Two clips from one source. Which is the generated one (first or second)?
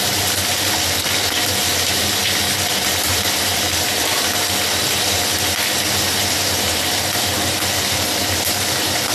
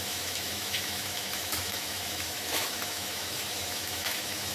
second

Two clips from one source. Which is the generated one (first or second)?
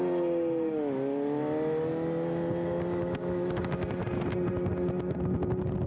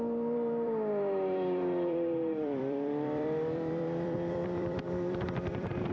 second